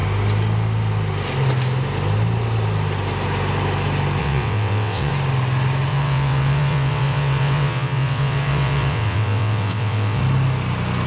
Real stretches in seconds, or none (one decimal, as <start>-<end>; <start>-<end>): 0.0-4.2; 5.1-5.9; 10.2-11.1